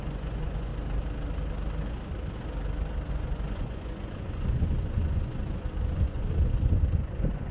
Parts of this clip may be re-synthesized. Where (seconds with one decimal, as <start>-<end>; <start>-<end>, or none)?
0.0-0.7; 3.1-7.5